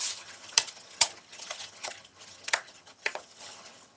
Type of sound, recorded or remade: remade